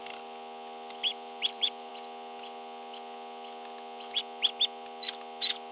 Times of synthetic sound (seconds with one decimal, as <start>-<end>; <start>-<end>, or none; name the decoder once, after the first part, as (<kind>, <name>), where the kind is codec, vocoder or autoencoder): 1.1-1.9 (vocoder, BigVGAN v2)